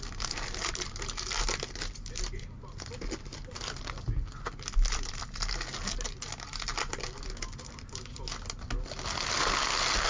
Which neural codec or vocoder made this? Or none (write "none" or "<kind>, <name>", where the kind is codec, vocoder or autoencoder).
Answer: none